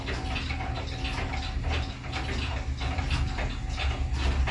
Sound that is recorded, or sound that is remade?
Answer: recorded